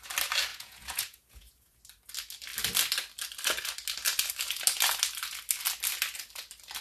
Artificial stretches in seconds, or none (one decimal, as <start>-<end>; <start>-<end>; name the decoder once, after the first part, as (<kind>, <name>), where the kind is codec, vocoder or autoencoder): 0.5-1.8 (vocoder, Vocos)